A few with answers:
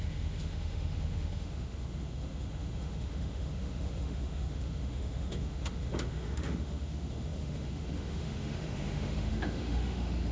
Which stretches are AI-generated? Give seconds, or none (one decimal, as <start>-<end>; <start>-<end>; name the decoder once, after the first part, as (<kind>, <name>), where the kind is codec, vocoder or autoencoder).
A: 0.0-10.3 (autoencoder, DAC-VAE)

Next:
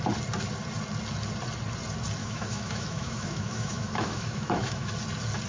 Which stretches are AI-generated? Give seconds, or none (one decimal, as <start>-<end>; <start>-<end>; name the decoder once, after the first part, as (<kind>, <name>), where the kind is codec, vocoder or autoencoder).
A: 2.2-4.9 (autoencoder, DAC-VAE)

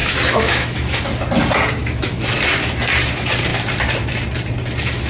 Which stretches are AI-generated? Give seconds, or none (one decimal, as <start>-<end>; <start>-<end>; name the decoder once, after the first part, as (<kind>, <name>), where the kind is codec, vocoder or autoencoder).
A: 0.0-1.1 (autoencoder, DAC-VAE); 1.8-2.4